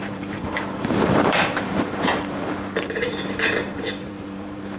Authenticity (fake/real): fake